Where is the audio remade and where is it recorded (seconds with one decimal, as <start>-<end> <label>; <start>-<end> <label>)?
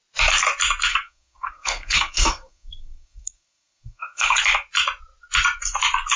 0.0-0.9 recorded; 0.9-4.4 remade; 4.4-6.2 recorded